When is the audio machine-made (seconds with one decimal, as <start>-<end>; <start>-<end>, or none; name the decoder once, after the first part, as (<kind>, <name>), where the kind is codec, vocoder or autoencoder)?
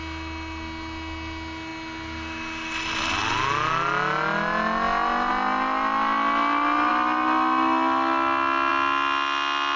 none